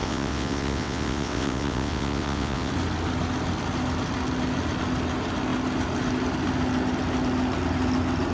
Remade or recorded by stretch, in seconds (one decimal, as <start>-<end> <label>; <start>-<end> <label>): 0.0-2.7 remade; 2.7-8.3 recorded